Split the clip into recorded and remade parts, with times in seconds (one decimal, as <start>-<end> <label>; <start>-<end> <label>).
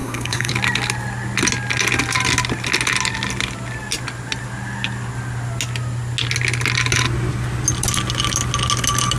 0.0-0.5 remade; 0.5-9.2 recorded